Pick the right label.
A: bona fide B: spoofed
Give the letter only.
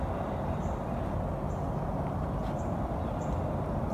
A